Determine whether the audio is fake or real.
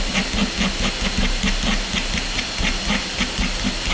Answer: real